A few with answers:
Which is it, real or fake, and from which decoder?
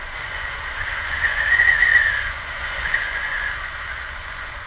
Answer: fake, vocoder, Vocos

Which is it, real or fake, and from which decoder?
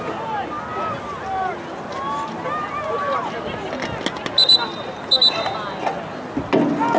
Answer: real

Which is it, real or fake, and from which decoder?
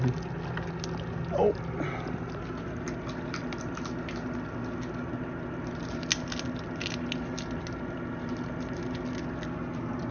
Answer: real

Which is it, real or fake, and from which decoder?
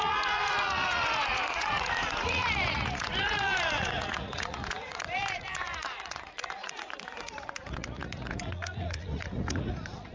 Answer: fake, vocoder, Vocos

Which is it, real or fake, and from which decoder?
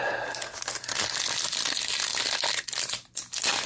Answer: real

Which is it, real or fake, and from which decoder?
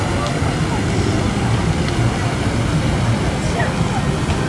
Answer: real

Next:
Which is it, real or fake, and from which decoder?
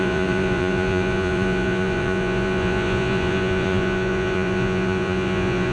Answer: fake, vocoder, Vocos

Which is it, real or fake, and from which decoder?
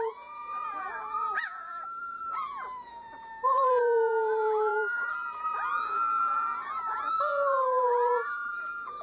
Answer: fake, vocoder, Vocos